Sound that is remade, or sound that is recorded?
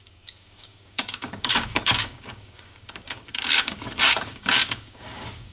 remade